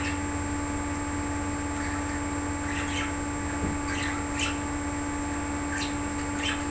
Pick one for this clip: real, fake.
real